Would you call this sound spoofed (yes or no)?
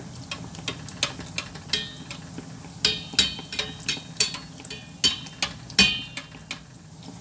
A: no